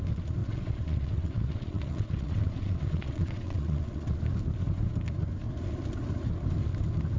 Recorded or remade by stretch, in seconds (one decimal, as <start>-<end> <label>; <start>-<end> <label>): 0.0-0.4 recorded; 0.4-4.2 remade; 4.2-7.2 recorded

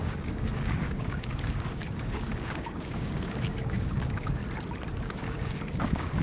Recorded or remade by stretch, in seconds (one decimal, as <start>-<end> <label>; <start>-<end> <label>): 0.0-4.4 remade; 4.4-4.9 recorded; 4.9-6.2 remade

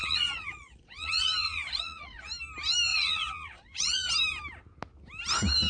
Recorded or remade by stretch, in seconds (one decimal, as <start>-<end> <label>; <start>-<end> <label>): 0.0-2.3 remade; 2.3-2.9 recorded; 2.9-4.1 remade; 4.1-5.7 recorded

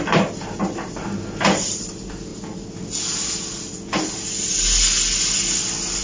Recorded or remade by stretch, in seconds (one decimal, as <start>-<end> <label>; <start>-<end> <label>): 0.0-2.3 remade; 2.3-6.0 recorded

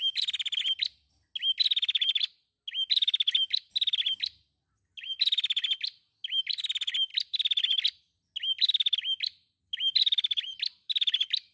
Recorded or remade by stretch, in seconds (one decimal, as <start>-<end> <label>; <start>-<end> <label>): 0.0-11.5 recorded

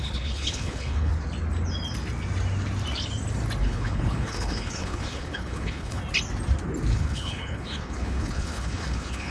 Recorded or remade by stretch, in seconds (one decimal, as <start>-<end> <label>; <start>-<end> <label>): 0.0-1.1 remade; 1.1-3.6 recorded; 3.6-6.0 remade; 6.0-6.9 recorded; 6.9-9.3 remade

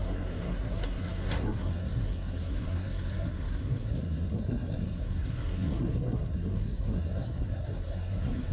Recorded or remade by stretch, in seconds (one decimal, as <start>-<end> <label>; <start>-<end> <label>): 0.0-8.5 remade

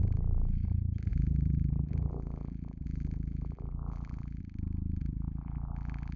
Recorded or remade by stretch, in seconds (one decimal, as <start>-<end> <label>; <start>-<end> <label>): 0.0-1.1 recorded; 1.1-4.4 remade; 4.4-5.0 recorded; 5.0-6.2 remade